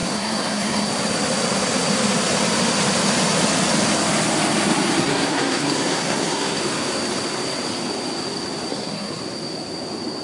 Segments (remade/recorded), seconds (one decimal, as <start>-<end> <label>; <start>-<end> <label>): 0.0-0.9 remade; 0.9-5.0 recorded; 5.0-6.6 remade; 6.6-8.7 recorded; 8.7-9.2 remade; 9.2-10.2 recorded